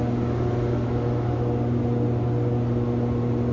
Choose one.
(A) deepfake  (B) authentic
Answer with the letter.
B